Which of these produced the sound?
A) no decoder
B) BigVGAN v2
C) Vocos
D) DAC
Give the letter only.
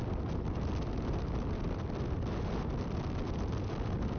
B